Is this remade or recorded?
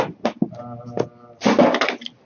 recorded